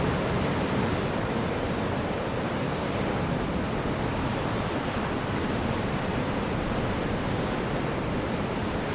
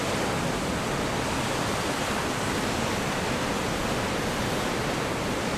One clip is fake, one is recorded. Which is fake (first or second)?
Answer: first